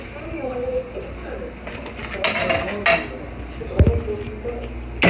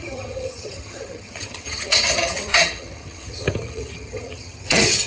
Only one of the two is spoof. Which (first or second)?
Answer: second